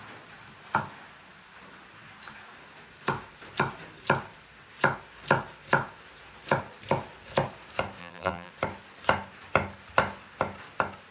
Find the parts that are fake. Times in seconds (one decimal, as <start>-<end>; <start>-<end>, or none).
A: 8.0-8.5